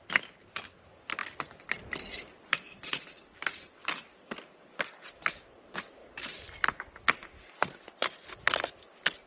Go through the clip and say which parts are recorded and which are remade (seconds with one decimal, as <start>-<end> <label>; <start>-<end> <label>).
0.0-1.2 recorded; 1.2-5.5 remade; 5.5-6.0 recorded; 6.0-6.8 remade; 6.8-9.3 recorded